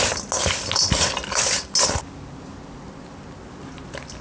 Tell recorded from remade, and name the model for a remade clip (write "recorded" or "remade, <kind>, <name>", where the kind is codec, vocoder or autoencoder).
recorded